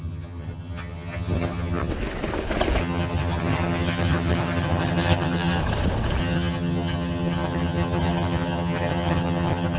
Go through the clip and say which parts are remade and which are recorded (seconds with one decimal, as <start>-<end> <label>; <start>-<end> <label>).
0.0-1.9 remade; 1.9-2.8 recorded; 2.8-5.6 remade; 5.6-6.2 recorded; 6.2-9.8 remade